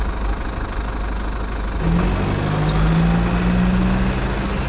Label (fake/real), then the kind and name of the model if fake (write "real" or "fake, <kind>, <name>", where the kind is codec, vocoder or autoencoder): real